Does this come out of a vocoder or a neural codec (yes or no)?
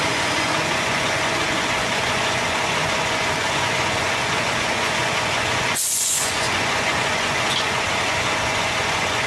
yes